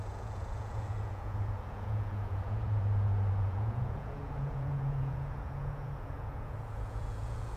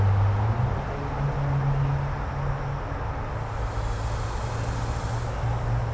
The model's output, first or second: first